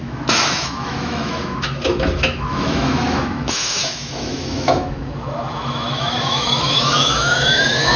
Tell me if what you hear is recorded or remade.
remade